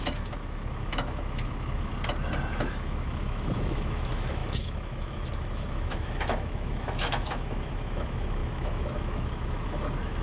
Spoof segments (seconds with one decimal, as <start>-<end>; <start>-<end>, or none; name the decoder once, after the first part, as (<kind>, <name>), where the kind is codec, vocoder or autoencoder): 0.0-1.9 (autoencoder, DAC-VAE); 2.5-10.2